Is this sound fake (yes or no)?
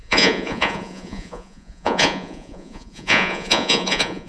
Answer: yes